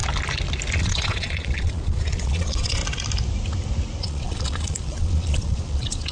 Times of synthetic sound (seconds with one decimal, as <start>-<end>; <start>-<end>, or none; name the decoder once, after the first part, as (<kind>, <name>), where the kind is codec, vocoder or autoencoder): 0.8-2.8 (vocoder, Vocos); 4.0-6.1